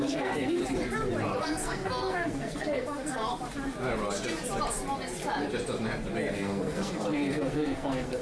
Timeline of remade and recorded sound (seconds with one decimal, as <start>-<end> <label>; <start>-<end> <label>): 0.0-0.6 remade; 0.6-1.4 recorded; 1.4-3.3 remade; 3.3-6.3 recorded; 6.3-8.2 remade